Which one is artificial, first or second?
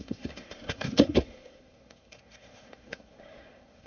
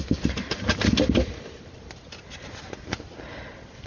first